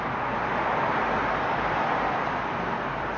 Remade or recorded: recorded